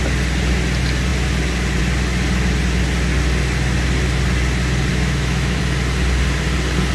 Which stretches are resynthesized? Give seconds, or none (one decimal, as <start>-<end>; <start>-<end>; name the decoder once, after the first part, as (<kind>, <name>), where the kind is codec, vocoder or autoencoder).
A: 4.9-5.6 (autoencoder, DAC-VAE)